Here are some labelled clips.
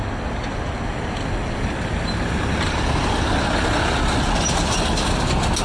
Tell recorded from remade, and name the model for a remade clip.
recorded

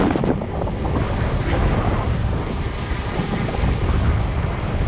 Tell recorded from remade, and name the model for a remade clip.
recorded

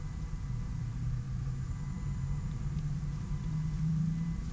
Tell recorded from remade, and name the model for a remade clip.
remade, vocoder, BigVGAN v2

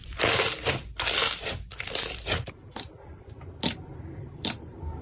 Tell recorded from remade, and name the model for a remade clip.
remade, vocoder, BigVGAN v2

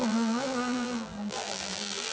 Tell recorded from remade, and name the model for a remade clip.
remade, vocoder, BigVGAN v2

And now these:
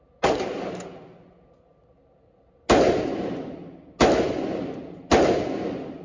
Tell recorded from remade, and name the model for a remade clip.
recorded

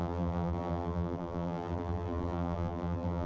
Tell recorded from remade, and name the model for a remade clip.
remade, vocoder, BigVGAN v2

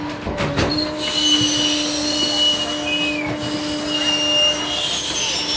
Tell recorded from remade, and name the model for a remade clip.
recorded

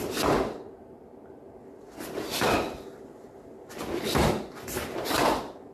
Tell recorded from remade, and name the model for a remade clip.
recorded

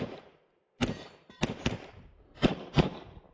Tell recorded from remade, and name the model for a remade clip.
remade, vocoder, BigVGAN v2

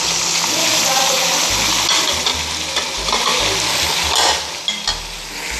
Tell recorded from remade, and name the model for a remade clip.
recorded